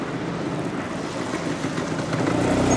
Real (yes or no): yes